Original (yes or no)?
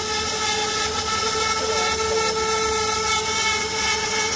yes